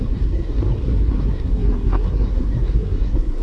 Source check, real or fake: fake